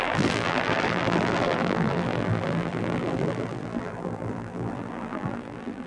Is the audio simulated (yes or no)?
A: yes